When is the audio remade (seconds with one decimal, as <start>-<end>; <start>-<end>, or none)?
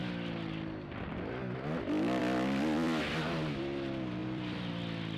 4.2-4.7